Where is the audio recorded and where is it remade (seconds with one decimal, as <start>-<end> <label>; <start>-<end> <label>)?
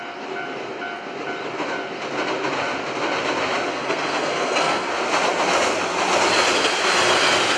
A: 0.0-3.7 recorded; 3.7-4.9 remade; 4.9-7.6 recorded